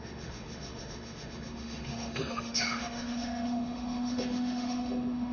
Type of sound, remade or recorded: remade